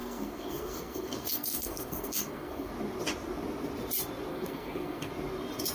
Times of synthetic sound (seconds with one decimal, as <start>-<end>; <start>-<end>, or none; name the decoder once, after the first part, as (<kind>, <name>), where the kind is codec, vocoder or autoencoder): 0.0-2.7 (codec, SNAC); 4.3-5.1

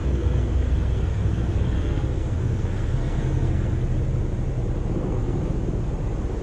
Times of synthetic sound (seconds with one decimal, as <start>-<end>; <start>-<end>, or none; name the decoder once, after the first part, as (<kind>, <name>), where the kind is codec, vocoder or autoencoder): 0.0-3.8 (codec, SNAC); 4.8-5.4

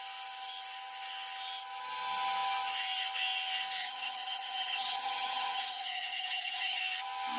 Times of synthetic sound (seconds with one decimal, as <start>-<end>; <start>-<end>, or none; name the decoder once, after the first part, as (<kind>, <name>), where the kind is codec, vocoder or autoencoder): 3.8-6.8 (vocoder, HiFi-GAN)